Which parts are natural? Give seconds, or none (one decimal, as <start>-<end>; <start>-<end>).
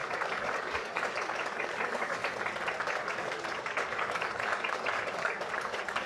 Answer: 2.2-2.9